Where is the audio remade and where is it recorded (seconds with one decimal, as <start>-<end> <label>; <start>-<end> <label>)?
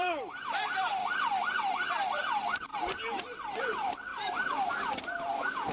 0.0-1.0 remade; 1.0-1.6 recorded; 1.6-2.7 remade; 2.7-3.6 recorded; 3.6-5.7 remade